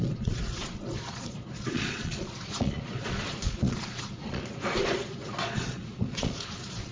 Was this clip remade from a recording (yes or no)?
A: yes